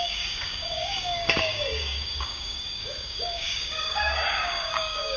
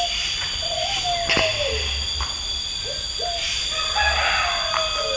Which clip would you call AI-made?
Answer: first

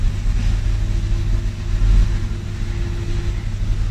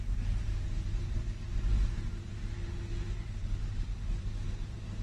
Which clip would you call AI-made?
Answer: second